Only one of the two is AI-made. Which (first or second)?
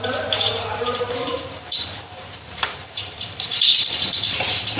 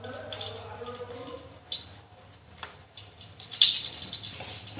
first